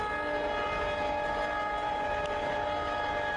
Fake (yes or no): no